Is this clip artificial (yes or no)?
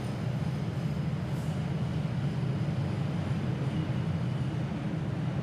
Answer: no